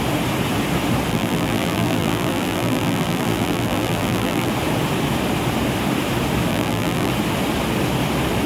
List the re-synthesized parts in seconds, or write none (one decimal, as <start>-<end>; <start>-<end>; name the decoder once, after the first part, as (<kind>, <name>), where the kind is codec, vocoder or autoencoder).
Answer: 1.1-4.5 (vocoder, BigVGAN v2); 6.5-7.1